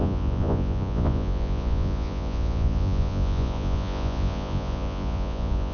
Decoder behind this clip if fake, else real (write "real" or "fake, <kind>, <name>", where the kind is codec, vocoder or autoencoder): fake, vocoder, Vocos